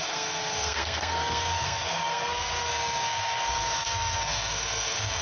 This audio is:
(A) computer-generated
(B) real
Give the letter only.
A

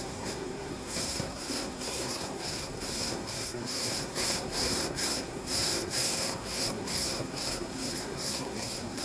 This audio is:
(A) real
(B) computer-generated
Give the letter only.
B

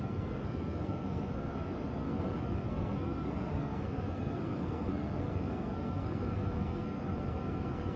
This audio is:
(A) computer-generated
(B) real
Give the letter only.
A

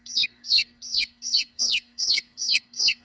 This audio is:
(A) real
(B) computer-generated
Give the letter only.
B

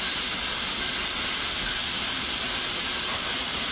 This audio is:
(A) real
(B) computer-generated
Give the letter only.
A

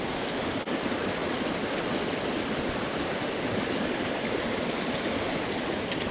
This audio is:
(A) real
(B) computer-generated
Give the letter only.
A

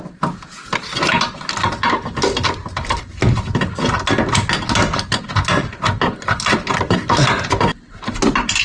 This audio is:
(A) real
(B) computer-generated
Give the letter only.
A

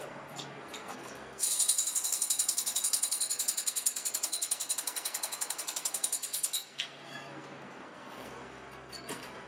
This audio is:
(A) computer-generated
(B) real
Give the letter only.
A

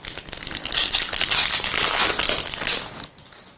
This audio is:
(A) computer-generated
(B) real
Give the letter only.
B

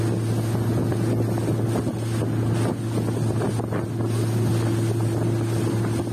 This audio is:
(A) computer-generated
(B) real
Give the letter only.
B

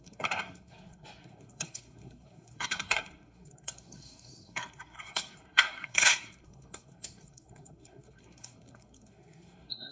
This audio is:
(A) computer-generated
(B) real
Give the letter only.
A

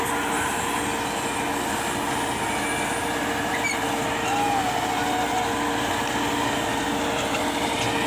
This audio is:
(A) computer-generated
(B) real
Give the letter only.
B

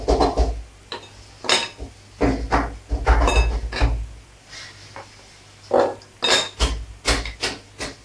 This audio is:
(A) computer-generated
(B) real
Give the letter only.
B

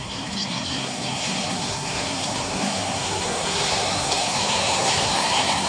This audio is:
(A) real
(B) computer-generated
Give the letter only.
B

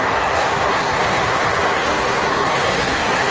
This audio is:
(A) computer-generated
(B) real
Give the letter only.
A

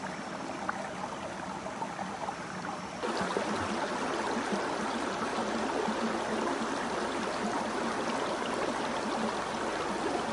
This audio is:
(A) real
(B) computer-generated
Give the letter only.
A